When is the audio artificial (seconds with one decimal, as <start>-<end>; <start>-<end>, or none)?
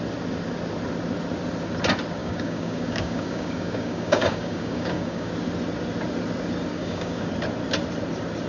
2.2-5.3; 6.7-7.3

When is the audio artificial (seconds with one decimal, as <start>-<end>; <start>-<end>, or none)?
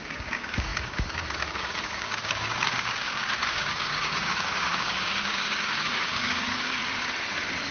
0.0-6.8